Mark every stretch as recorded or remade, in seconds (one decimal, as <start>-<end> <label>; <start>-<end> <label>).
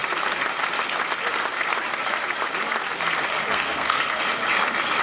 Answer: 0.0-3.5 recorded; 3.5-4.2 remade; 4.2-5.0 recorded